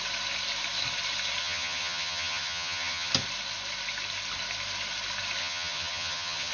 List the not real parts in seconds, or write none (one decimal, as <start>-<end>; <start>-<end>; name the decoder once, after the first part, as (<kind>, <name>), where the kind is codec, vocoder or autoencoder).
1.4-3.1 (vocoder, HiFi-GAN); 5.4-6.5